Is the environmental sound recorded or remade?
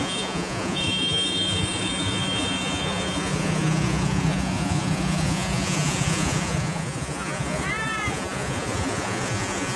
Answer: remade